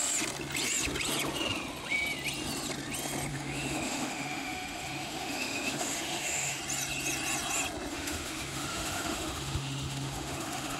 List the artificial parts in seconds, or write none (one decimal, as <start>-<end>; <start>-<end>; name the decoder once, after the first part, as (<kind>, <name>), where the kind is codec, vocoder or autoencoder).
3.3-6.6 (autoencoder, DAC-VAE); 7.9-10.8